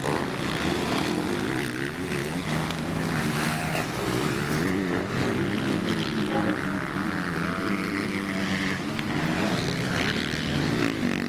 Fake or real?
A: real